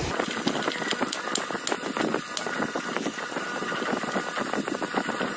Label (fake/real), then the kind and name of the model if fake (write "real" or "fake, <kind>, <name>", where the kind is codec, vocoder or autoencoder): real